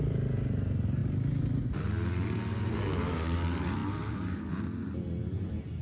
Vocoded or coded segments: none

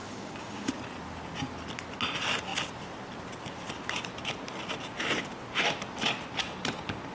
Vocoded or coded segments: 0.0-0.7 (codec, DAC)

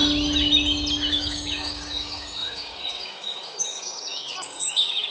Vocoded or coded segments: 1.1-5.1 (codec, DAC)

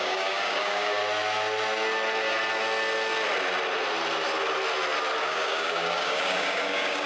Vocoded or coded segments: 0.0-1.0 (codec, DAC); 5.2-7.1

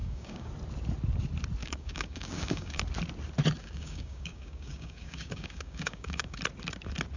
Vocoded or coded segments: 0.0-0.5 (codec, DAC); 1.6-2.8; 3.6-6.4

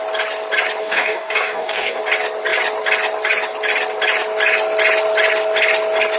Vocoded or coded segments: 0.8-2.0 (codec, DAC)

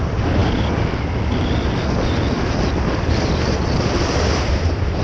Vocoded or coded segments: none

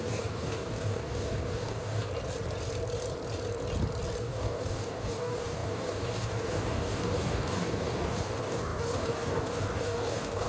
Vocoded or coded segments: 0.0-2.1 (codec, DAC); 4.2-10.5